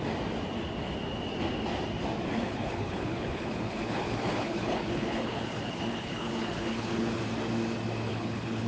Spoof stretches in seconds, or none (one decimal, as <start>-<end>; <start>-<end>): 2.3-7.2; 8.1-8.7